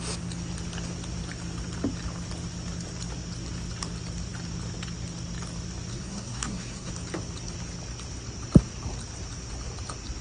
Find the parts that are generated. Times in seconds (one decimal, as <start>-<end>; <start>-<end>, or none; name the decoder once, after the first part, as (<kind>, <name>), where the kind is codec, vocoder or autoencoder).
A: 5.9-6.9 (codec, SNAC)